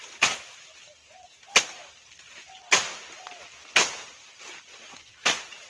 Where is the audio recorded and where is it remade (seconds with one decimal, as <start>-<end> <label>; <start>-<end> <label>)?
0.0-1.0 remade; 1.0-4.4 recorded; 4.4-5.1 remade; 5.1-5.7 recorded